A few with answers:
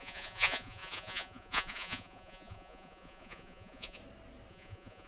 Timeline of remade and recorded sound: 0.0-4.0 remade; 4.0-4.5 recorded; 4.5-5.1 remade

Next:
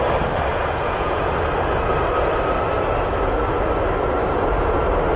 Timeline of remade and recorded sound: 0.0-0.5 recorded; 0.5-1.3 remade; 1.3-5.2 recorded

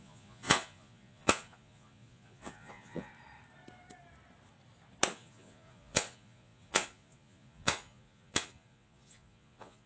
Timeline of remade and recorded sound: 0.0-3.1 remade; 3.1-5.1 recorded; 5.1-9.9 remade

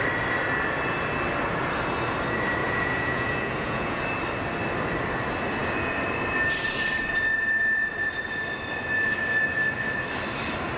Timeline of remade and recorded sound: 0.0-2.6 recorded; 2.6-4.0 remade; 4.0-10.8 recorded

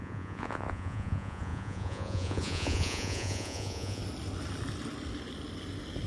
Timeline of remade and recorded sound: 0.0-4.0 remade; 4.0-6.1 recorded

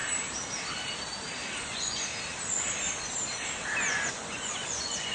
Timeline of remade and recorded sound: 0.0-1.6 recorded; 1.6-2.1 remade; 2.1-3.9 recorded; 3.9-5.1 remade

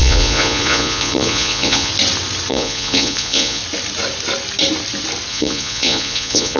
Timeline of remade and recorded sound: 0.0-1.9 remade; 1.9-2.5 recorded; 2.5-3.6 remade; 3.6-5.3 recorded; 5.3-6.6 remade